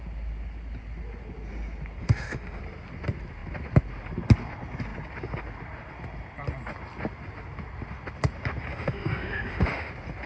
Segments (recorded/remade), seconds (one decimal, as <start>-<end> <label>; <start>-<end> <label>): 0.0-2.0 recorded; 2.0-2.6 remade; 2.6-8.7 recorded; 8.7-9.9 remade; 9.9-10.3 recorded